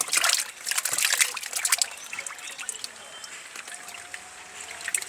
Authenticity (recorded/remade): recorded